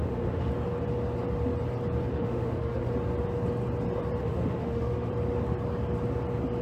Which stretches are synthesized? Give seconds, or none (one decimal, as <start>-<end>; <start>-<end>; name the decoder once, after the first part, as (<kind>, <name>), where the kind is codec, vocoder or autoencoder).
0.0-0.5 (autoencoder, DAC-VAE); 2.1-2.9; 4.2-5.1